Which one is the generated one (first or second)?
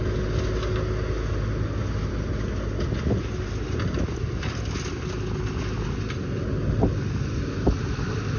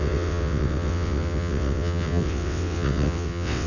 second